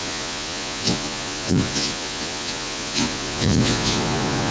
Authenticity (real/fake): fake